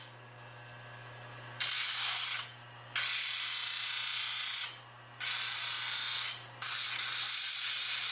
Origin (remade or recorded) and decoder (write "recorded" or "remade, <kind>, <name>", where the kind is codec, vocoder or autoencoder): recorded